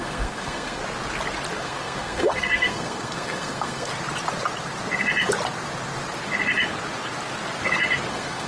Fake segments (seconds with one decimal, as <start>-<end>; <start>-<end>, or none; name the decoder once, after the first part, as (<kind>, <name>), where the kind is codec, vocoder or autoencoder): 0.0-0.8 (codec, SNAC); 1.6-3.9; 8.1-8.5